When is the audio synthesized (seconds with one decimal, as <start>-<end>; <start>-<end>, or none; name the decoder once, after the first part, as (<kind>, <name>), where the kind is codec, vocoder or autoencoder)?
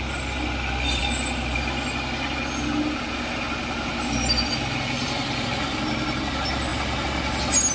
none